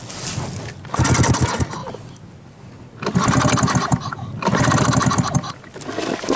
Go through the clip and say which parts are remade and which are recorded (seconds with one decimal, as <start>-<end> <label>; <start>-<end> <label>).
0.0-6.4 recorded